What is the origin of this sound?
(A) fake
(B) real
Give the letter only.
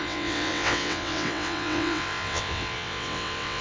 A